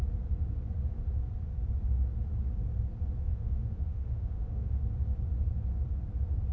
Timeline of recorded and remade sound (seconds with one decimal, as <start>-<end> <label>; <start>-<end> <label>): 0.0-3.3 recorded; 3.3-4.8 remade; 4.8-6.5 recorded